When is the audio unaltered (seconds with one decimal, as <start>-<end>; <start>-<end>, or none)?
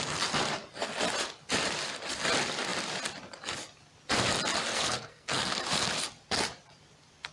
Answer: 0.0-4.7; 5.5-7.3